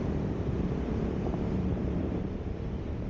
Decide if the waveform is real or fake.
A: fake